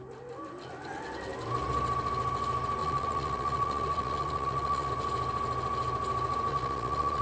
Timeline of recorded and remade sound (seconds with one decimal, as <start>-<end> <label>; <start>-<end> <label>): 0.0-2.8 recorded; 2.8-4.9 remade; 4.9-6.5 recorded; 6.5-7.2 remade